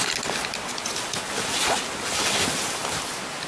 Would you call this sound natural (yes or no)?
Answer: yes